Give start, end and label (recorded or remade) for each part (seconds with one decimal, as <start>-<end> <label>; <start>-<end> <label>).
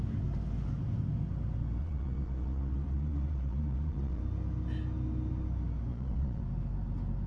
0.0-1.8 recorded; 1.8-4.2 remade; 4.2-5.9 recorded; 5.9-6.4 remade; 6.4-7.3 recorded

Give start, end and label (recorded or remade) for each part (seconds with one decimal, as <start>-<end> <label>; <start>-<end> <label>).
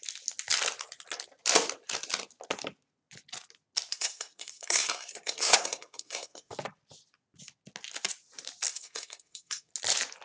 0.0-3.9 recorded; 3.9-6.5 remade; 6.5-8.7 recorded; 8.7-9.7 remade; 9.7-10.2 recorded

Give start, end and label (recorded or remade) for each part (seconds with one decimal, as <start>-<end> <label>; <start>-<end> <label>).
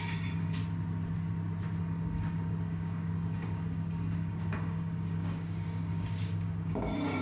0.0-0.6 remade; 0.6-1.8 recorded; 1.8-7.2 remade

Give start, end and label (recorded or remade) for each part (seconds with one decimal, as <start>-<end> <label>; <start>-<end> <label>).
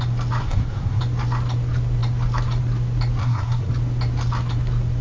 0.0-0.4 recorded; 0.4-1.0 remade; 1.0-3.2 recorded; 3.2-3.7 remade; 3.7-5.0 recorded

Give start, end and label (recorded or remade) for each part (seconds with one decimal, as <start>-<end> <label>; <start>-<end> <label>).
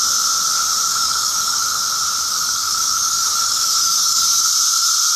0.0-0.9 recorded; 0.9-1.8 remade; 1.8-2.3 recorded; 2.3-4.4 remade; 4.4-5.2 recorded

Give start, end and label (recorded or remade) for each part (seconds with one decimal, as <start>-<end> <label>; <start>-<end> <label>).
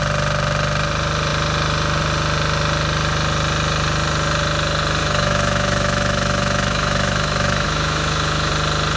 0.0-5.0 recorded; 5.0-8.5 remade; 8.5-9.0 recorded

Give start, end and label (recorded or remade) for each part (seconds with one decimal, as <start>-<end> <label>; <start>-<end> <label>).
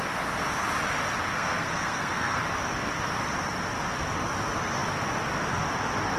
0.0-1.3 recorded; 1.3-2.4 remade; 2.4-6.2 recorded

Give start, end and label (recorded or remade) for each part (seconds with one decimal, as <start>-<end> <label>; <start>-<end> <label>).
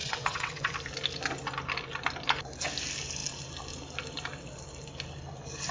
0.0-0.7 remade; 0.7-5.7 recorded